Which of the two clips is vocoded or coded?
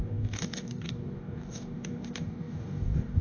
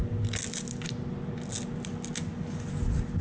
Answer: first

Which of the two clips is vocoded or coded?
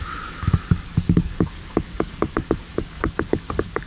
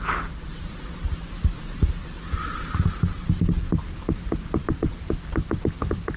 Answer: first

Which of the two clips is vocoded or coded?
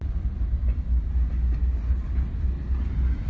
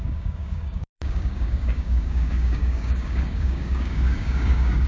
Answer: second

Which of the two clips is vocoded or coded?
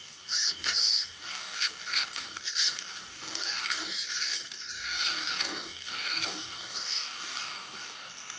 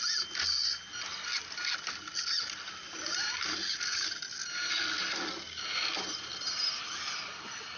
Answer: first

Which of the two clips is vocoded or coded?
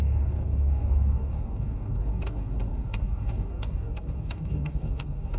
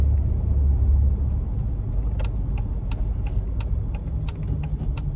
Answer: first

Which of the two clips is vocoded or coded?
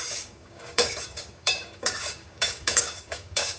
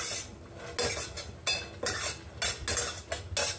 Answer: first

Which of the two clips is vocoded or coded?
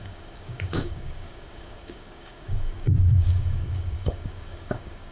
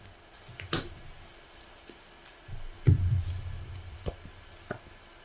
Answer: first